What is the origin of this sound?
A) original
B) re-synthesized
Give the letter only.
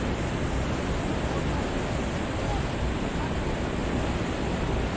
A